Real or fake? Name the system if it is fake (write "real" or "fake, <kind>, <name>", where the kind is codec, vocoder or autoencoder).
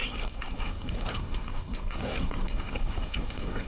fake, codec, SNAC